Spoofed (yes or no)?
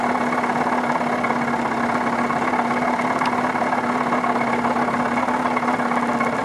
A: no